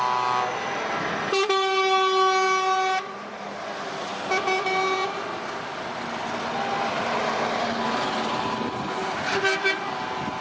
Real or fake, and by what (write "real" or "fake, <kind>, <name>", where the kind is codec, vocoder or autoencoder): real